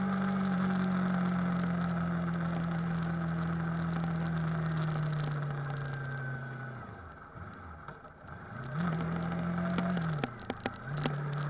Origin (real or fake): real